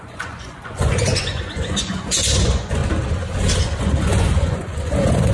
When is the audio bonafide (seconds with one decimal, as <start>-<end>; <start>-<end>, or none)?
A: 2.8-3.6